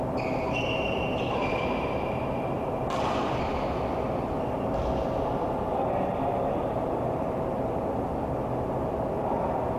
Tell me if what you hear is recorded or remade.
recorded